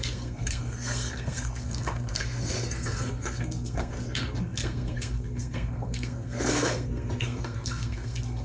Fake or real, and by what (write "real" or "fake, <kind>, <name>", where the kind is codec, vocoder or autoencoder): fake, codec, SNAC